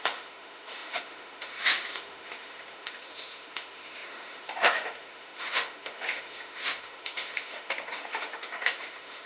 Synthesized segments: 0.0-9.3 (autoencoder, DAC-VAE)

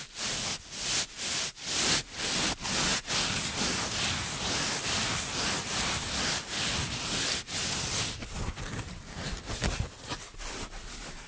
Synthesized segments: none